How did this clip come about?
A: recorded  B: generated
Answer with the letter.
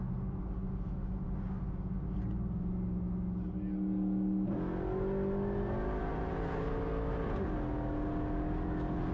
A